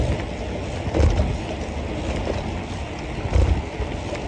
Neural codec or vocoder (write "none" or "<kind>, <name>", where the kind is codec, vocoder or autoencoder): none